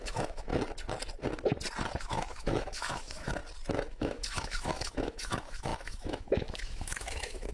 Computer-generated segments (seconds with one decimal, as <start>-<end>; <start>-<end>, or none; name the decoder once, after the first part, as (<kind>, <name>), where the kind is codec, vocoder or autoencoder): 0.0-0.5 (autoencoder, DAC-VAE); 2.0-3.4; 3.9-7.5